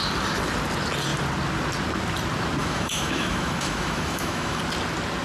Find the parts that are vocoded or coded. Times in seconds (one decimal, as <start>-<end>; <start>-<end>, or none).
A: 2.6-4.6